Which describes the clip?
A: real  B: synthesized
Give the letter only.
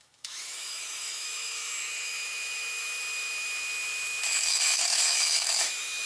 B